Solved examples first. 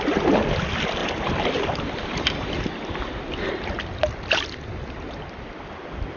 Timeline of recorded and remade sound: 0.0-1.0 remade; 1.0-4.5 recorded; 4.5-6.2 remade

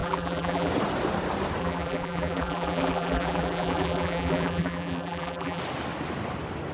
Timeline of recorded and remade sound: 0.0-0.7 remade; 0.7-1.6 recorded; 1.6-5.6 remade; 5.6-6.7 recorded

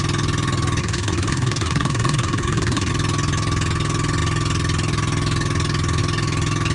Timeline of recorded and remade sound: 0.0-0.8 recorded; 0.8-2.9 remade; 2.9-6.7 recorded

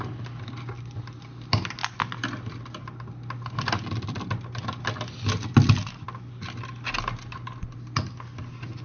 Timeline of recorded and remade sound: 0.0-8.8 recorded